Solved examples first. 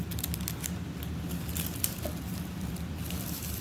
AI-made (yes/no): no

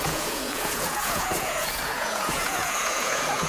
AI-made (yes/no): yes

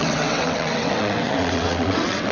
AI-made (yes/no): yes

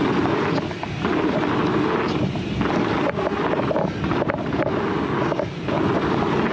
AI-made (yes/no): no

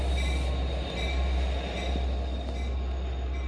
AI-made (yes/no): no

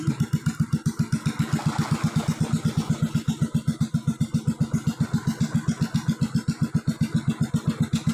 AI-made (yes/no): no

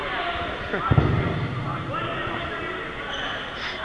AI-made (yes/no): no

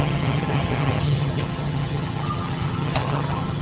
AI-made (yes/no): yes